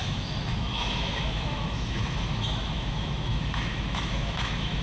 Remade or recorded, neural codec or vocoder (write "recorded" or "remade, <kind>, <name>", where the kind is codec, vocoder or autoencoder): remade, autoencoder, DAC-VAE